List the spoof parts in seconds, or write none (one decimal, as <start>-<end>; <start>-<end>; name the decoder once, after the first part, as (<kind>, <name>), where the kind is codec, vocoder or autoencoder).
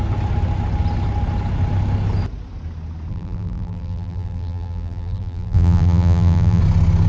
3.1-6.6 (vocoder, BigVGAN v2)